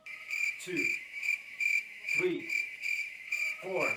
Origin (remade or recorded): remade